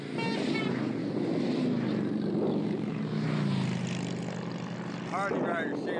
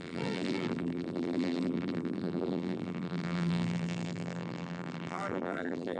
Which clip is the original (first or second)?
first